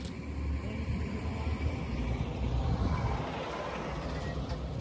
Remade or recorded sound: recorded